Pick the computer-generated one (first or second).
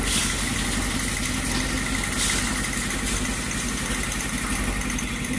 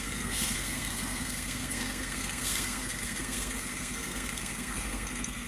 second